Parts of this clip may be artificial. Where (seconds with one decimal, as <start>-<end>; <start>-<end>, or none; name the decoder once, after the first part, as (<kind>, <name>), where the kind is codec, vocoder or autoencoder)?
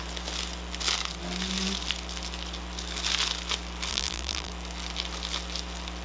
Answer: 3.9-4.5 (vocoder, BigVGAN v2)